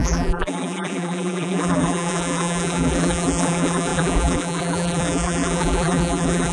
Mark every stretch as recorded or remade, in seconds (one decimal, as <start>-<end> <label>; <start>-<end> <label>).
0.0-6.5 remade